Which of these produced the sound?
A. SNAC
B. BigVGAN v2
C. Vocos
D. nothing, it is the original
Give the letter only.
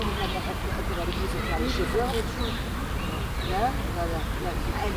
D